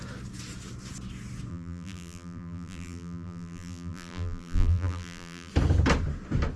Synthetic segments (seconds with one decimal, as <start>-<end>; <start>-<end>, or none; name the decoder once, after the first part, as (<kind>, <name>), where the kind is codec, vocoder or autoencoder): 1.5-5.5 (vocoder, BigVGAN v2)